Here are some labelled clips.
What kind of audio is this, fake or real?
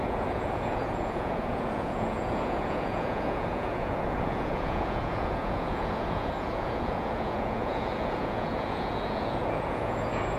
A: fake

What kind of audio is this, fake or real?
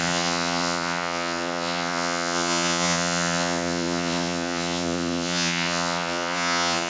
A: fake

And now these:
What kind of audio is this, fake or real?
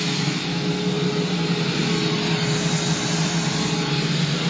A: real